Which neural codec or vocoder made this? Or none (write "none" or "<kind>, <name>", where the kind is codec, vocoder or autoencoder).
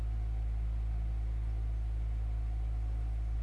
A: none